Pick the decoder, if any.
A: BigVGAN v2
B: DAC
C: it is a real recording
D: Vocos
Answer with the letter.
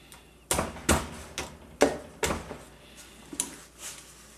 C